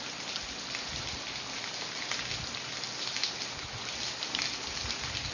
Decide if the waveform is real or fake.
real